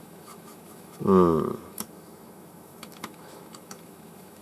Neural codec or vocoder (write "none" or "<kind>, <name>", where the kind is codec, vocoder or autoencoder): autoencoder, DAC-VAE